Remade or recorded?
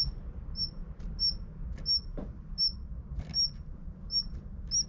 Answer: recorded